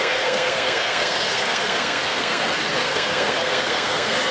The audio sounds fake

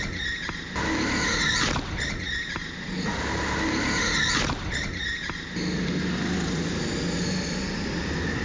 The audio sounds real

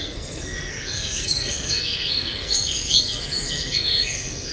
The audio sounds fake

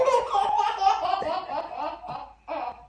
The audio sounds real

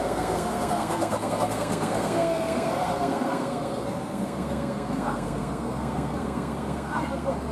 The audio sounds fake